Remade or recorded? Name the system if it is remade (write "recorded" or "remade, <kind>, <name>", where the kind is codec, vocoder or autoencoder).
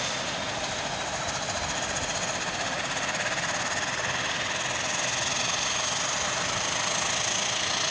recorded